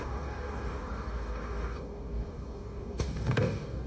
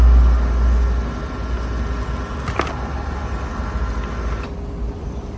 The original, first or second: second